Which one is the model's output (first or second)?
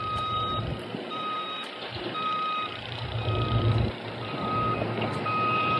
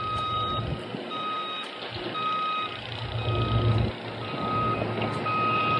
first